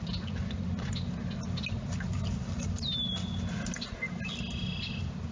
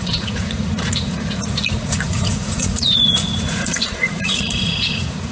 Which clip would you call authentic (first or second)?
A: first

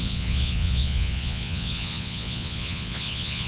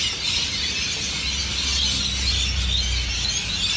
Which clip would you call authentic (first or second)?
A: second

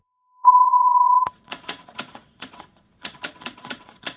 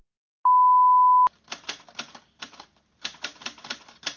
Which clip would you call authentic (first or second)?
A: second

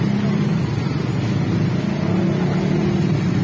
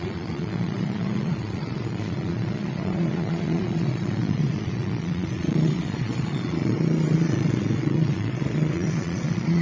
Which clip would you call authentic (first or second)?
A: first